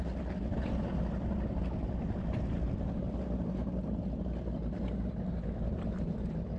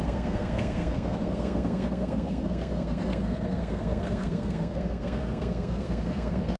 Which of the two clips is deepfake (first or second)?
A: second